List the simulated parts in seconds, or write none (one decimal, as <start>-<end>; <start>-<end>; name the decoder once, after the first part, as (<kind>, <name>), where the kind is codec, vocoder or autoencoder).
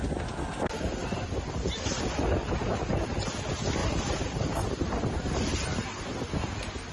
none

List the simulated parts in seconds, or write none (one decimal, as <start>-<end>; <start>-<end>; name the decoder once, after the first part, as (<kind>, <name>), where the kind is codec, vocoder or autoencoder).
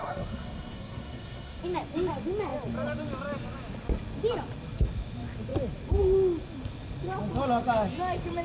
0.0-1.6 (codec, SNAC)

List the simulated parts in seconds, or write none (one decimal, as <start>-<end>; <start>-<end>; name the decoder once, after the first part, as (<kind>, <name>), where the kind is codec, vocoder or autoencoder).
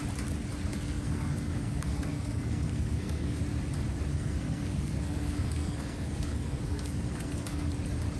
0.7-3.4 (codec, SNAC); 4.1-7.7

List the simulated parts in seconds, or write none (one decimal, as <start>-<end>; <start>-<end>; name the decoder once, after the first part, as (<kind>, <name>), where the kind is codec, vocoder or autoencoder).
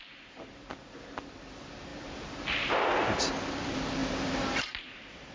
4.0-5.3 (vocoder, BigVGAN v2)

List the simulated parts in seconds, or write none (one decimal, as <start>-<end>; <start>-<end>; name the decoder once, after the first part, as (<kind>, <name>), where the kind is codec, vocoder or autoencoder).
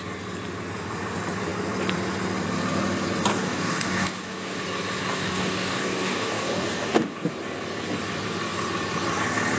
3.3-4.6 (codec, DAC); 5.1-7.3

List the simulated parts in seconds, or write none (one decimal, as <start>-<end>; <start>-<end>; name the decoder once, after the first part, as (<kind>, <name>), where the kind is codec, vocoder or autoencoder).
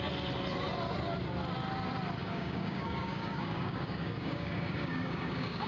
2.2-5.7 (codec, DAC)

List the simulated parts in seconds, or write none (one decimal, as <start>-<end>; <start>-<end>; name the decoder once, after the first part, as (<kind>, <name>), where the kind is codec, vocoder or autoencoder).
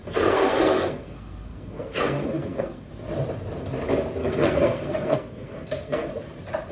0.0-2.9 (codec, SNAC); 4.2-6.1